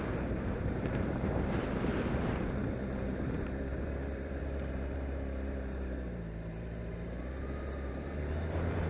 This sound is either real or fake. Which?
fake